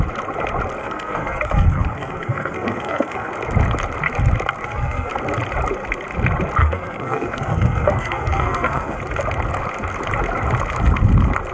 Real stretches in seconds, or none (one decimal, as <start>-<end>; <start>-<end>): 0.0-0.8; 3.3-4.6; 5.1-6.6; 9.0-11.5